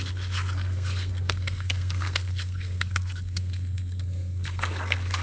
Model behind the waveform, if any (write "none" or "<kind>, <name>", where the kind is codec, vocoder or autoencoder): codec, SNAC